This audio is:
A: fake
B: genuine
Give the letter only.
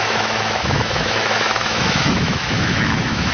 A